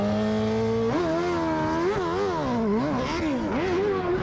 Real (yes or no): yes